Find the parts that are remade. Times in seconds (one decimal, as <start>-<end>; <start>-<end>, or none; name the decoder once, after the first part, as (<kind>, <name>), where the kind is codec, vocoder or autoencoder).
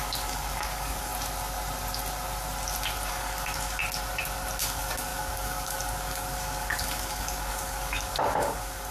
0.0-1.1 (codec, DAC); 3.1-3.8; 4.6-8.9